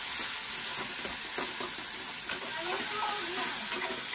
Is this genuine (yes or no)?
yes